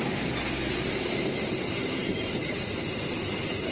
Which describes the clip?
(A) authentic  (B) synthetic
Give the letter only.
A